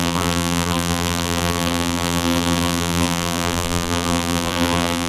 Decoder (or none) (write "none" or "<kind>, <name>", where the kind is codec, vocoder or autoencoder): vocoder, BigVGAN v2